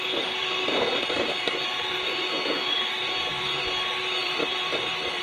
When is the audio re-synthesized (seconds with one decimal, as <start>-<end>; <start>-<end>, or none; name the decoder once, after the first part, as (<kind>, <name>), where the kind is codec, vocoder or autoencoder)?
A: 4.2-5.2 (vocoder, BigVGAN v2)